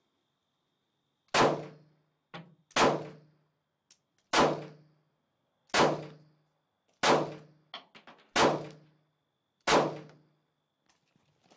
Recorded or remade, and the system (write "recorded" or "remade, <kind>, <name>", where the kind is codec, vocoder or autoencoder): recorded